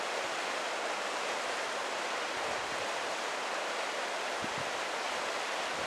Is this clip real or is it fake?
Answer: real